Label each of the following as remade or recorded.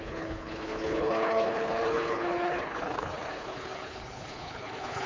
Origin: remade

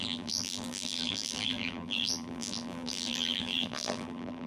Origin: remade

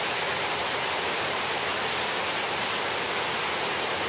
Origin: recorded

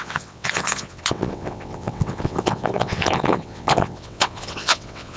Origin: remade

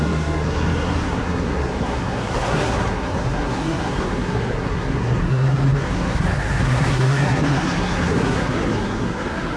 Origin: remade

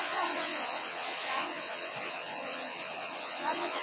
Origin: remade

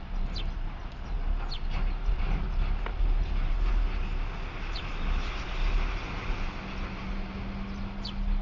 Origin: recorded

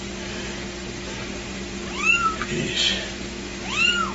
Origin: remade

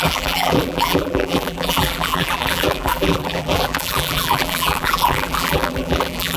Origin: remade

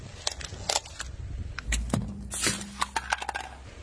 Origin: recorded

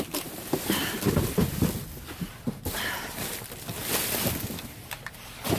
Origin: recorded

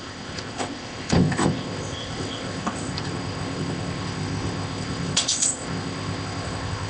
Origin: remade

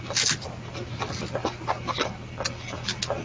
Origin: recorded